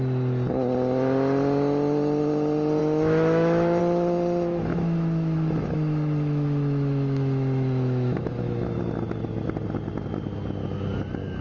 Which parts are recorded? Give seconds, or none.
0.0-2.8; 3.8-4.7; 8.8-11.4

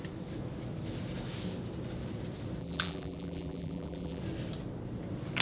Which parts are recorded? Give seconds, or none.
0.0-2.6; 4.2-5.4

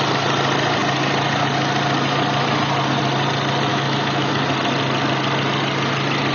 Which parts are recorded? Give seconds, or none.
0.0-3.7; 4.3-6.3

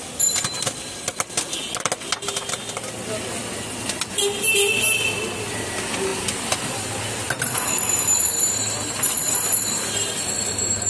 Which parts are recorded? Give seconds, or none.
0.0-10.9

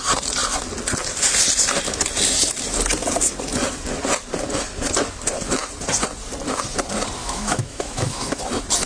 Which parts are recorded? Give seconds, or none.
0.0-7.2; 8.4-8.9